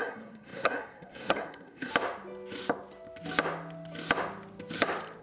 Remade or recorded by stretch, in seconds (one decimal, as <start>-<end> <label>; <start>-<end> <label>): 0.0-1.9 remade; 1.9-5.2 recorded